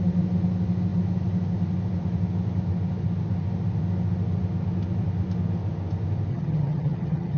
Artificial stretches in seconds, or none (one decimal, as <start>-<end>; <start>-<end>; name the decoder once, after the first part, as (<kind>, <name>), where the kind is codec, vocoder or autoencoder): 6.3-7.4 (vocoder, HiFi-GAN)